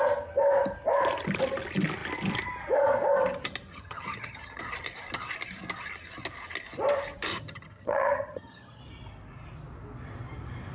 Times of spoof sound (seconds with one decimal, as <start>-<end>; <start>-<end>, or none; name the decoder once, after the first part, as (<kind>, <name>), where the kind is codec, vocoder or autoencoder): 3.7-4.6 (vocoder, HiFi-GAN); 7.3-8.8